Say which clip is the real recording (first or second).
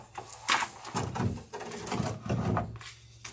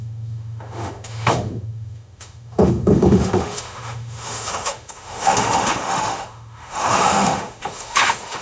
first